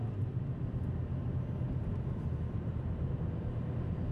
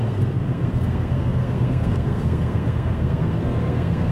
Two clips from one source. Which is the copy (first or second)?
second